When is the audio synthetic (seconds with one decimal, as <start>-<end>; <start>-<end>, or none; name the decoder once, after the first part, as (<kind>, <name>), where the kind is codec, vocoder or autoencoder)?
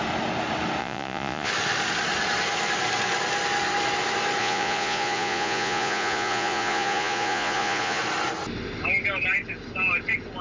0.8-1.5 (vocoder, Vocos); 4.4-8.0